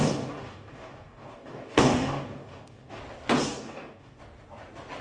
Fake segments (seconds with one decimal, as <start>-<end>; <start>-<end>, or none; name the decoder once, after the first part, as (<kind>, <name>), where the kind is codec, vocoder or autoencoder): 0.0-3.0 (codec, DAC); 3.5-4.2